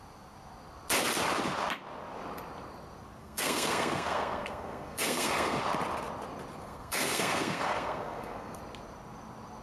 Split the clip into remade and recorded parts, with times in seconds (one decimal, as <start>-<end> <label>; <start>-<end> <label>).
0.0-3.2 recorded; 3.2-5.6 remade; 5.6-6.6 recorded; 6.6-8.6 remade; 8.6-9.6 recorded

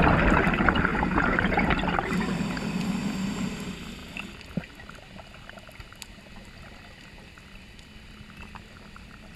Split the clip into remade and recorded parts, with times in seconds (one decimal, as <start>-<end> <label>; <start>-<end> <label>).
0.0-0.9 recorded; 0.9-1.7 remade; 1.7-9.4 recorded

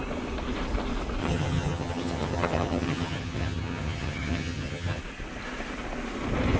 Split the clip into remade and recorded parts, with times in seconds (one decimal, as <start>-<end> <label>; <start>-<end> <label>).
0.0-1.2 recorded; 1.2-5.0 remade; 5.0-6.6 recorded

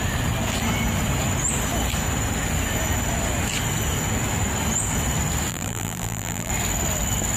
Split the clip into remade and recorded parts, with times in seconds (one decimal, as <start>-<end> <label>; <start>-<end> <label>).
0.0-5.5 recorded; 5.5-6.5 remade; 6.5-7.4 recorded

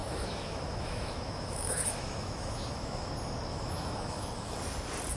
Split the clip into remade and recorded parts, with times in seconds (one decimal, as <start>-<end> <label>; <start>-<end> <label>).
0.0-3.1 remade; 3.1-3.5 recorded; 3.5-4.6 remade; 4.6-5.2 recorded

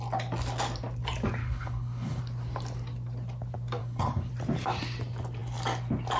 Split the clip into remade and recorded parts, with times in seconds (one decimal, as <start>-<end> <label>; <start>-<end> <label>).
0.0-1.4 recorded; 1.4-2.2 remade; 2.2-3.8 recorded; 3.8-4.3 remade; 4.3-6.2 recorded

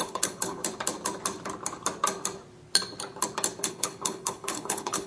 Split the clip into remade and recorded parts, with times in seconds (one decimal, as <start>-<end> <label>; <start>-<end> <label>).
0.0-0.6 remade; 0.6-3.7 recorded; 3.7-5.1 remade

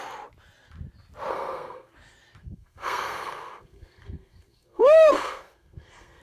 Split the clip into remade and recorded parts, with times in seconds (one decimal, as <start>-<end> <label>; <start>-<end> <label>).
0.0-1.3 recorded; 1.3-1.9 remade; 1.9-2.4 recorded; 2.4-6.2 remade